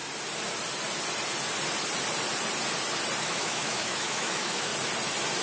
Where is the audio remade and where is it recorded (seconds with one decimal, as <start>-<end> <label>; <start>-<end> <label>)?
0.0-3.2 recorded; 3.2-4.7 remade; 4.7-5.4 recorded

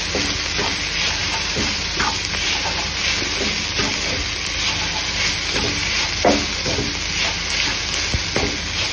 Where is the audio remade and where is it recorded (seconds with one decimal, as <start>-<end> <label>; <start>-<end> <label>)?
0.0-1.2 recorded; 1.2-3.0 remade; 3.0-8.9 recorded

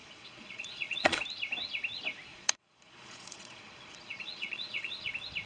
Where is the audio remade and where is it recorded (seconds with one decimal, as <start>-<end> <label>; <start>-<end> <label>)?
0.0-1.2 remade; 1.2-2.3 recorded; 2.3-5.1 remade; 5.1-5.5 recorded

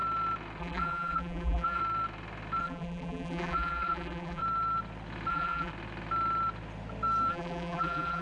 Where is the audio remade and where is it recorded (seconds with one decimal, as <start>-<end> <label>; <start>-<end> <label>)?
0.0-0.6 recorded; 0.6-1.8 remade; 1.8-2.6 recorded; 2.6-4.4 remade; 4.4-5.3 recorded; 5.3-5.7 remade; 5.7-7.3 recorded; 7.3-8.2 remade

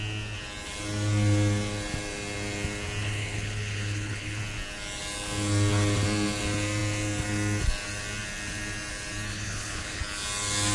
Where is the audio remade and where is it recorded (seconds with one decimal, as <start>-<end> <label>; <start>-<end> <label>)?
0.0-3.0 recorded; 3.0-4.4 remade; 4.4-9.3 recorded; 9.3-10.0 remade; 10.0-10.7 recorded

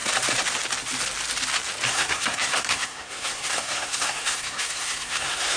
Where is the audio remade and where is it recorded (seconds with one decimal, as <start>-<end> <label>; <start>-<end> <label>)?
0.0-1.9 recorded; 1.9-5.6 remade

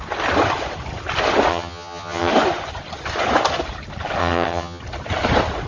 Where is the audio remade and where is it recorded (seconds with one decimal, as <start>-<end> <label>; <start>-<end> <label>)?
0.0-1.5 recorded; 1.5-2.3 remade; 2.3-4.2 recorded; 4.2-4.8 remade; 4.8-5.7 recorded

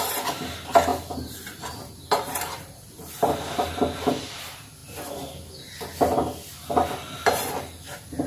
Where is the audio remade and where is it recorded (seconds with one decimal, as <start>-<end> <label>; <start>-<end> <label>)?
0.0-0.9 recorded; 0.9-3.8 remade; 3.8-8.3 recorded